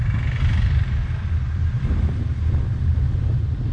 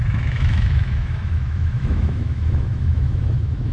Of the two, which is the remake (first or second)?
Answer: second